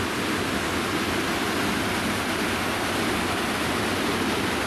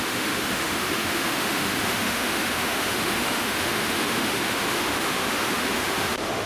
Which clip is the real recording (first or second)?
first